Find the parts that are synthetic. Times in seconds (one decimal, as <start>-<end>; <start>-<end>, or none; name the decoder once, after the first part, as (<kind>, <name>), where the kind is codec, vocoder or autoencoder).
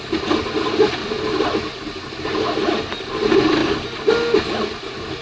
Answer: none